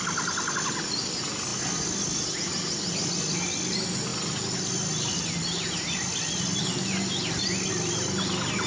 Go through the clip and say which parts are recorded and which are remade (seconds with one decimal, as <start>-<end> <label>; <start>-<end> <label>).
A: 0.0-8.7 recorded